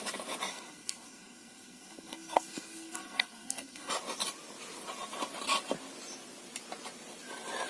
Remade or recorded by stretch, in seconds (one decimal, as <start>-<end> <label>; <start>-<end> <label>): 0.0-0.5 recorded; 0.5-3.9 remade; 3.9-7.7 recorded